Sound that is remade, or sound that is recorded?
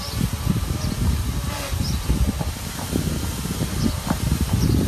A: remade